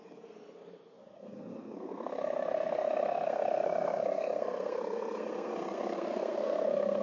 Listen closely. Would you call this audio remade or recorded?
remade